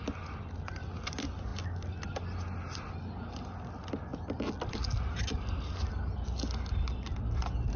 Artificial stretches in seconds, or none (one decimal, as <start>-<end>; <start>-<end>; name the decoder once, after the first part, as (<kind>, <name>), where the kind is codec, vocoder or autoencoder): none